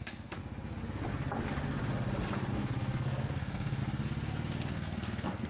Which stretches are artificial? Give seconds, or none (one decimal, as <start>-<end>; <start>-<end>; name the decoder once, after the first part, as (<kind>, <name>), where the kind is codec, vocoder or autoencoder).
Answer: 0.0-0.4 (codec, SNAC); 2.5-3.8; 4.7-5.5